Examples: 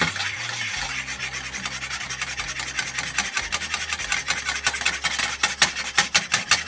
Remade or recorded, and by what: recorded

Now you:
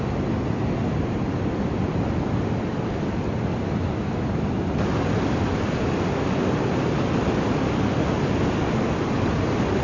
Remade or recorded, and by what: recorded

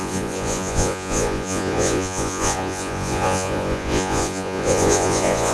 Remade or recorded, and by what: remade, vocoder, Vocos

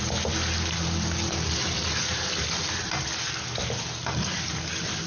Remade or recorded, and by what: recorded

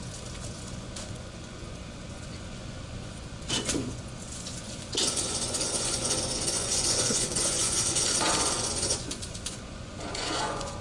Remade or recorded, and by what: remade, vocoder, Vocos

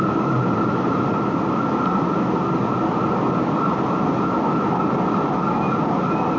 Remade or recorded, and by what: recorded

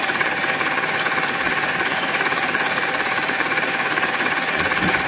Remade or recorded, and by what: remade, vocoder, Vocos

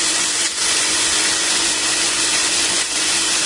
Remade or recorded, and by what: remade, vocoder, Vocos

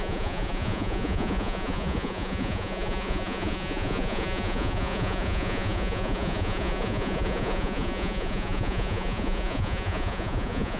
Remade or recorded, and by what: remade, vocoder, Vocos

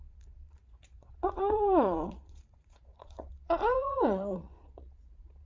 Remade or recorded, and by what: remade, vocoder, Vocos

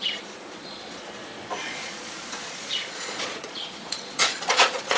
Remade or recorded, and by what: remade, vocoder, Vocos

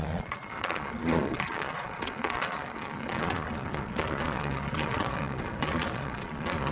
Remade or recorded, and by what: remade, vocoder, Vocos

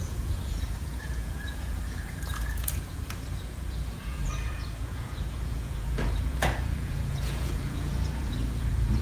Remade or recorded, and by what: remade, vocoder, Vocos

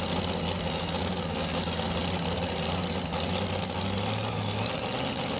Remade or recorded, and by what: recorded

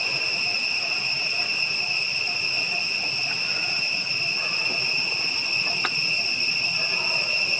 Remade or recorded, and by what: recorded